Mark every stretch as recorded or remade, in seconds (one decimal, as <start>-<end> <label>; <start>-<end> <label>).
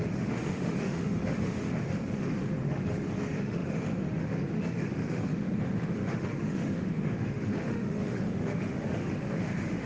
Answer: 0.0-9.9 remade